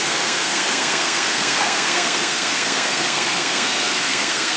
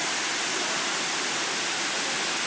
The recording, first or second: second